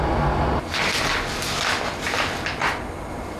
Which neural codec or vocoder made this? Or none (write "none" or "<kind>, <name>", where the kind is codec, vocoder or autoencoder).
none